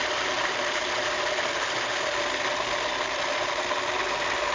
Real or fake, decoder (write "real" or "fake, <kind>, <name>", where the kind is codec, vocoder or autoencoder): real